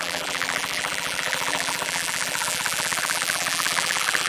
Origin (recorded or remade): remade